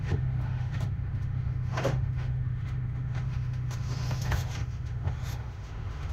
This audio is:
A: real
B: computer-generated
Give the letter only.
B